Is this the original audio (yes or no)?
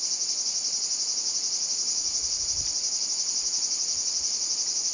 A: yes